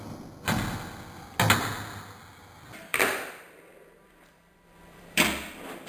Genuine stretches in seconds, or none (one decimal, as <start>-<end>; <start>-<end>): 0.0-2.9